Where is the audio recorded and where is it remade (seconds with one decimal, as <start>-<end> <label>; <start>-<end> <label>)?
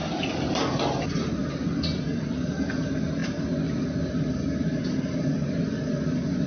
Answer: 0.0-6.5 recorded